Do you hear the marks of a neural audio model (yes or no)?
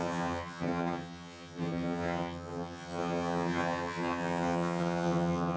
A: yes